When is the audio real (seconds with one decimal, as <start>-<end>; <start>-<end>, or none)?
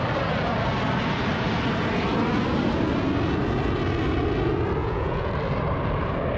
0.0-4.8; 5.3-6.4